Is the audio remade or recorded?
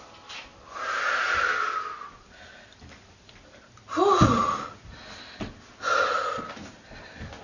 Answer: recorded